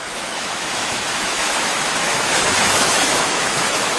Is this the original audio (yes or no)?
no